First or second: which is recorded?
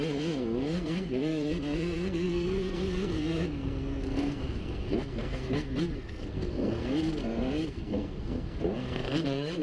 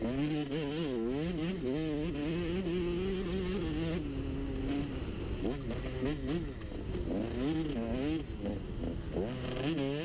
second